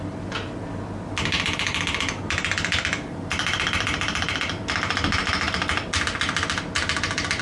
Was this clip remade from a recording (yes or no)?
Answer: no